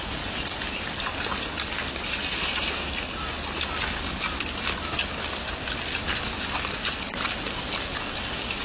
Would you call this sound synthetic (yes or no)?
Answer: no